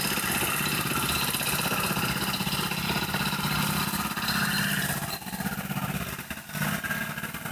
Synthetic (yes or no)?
no